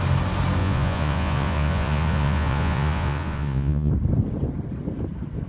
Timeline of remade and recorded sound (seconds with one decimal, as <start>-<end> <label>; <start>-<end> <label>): 0.0-0.6 recorded; 0.6-3.9 remade; 3.9-5.5 recorded